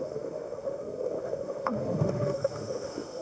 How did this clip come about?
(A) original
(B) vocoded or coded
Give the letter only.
B